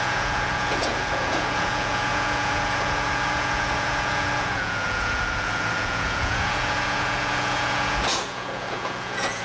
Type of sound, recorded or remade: remade